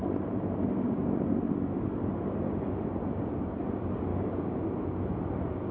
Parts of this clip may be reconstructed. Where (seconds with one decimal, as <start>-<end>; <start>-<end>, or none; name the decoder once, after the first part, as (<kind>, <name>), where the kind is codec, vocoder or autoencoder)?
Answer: 4.1-4.6 (codec, DAC)